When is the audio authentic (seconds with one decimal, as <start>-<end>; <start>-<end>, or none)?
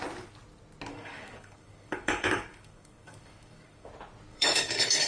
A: 0.0-0.9; 3.9-4.3